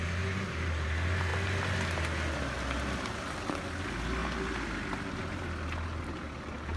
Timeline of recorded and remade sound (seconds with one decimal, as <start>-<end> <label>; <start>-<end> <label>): 0.0-6.8 recorded